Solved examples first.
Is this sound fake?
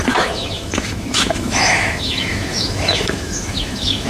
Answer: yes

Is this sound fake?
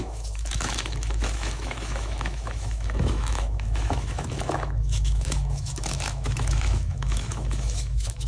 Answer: yes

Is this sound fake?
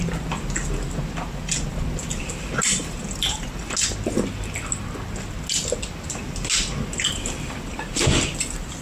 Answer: no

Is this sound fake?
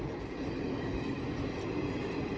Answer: no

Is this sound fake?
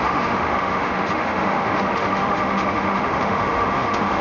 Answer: yes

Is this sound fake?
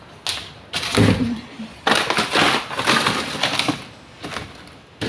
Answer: no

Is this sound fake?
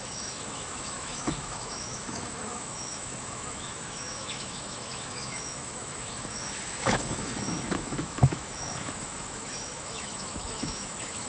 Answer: yes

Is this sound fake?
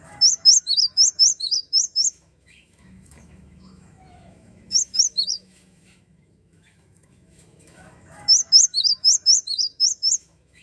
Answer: yes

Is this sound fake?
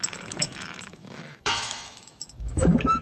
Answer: yes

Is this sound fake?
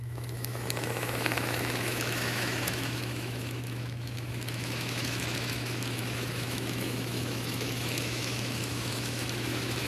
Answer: yes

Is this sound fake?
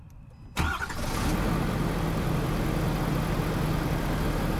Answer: no